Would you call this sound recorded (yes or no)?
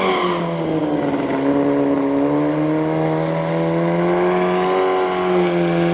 yes